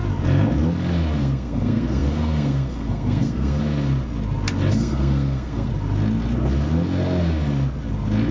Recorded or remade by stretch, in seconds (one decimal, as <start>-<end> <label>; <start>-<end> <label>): 0.0-1.2 recorded; 1.2-3.6 remade; 3.6-4.7 recorded; 4.7-5.7 remade; 5.7-8.3 recorded